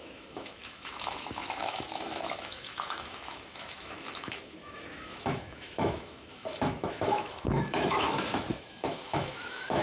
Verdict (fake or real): fake